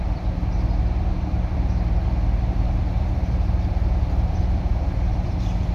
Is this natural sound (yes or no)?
no